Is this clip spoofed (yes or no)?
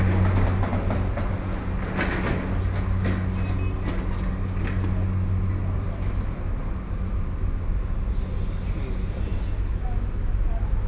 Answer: no